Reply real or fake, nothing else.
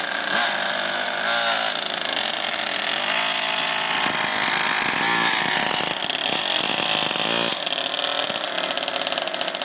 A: real